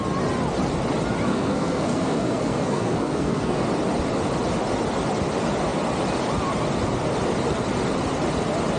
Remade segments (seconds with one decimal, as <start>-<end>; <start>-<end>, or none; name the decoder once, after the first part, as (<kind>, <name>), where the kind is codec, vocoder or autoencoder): 1.3-3.6 (codec, SNAC)